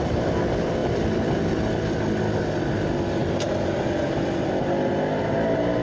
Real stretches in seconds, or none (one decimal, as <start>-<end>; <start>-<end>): 0.0-5.8

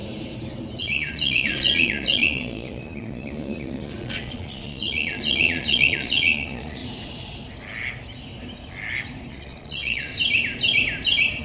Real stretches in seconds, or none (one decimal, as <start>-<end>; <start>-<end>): 0.0-0.8; 6.8-9.3; 10.1-11.4

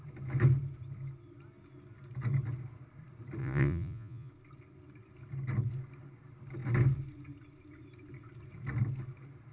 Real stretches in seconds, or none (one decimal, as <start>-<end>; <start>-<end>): 0.0-3.4; 4.3-9.5

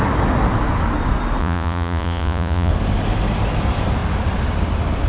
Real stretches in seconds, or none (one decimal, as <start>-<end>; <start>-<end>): 0.0-1.4; 2.7-5.1

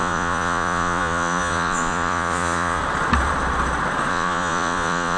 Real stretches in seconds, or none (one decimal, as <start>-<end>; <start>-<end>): 2.8-4.1

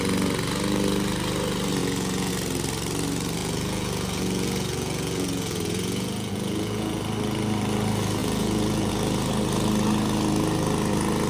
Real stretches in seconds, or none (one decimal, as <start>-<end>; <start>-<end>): 0.0-1.8; 2.3-3.4; 7.0-8.2; 8.9-11.3

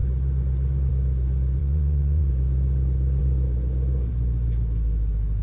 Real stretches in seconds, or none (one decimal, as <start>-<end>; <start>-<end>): 0.0-1.6; 2.3-5.4